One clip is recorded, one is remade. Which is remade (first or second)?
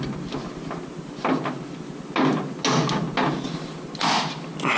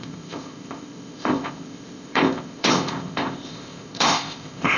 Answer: second